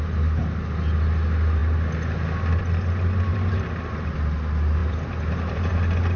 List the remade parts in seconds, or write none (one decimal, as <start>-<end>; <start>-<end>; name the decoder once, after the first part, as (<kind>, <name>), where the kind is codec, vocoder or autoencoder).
3.3-4.2 (vocoder, BigVGAN v2); 4.8-5.7